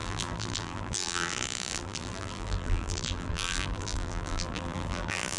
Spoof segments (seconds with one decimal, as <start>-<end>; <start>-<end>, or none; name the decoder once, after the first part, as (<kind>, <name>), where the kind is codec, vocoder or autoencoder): 0.0-5.4 (vocoder, BigVGAN v2)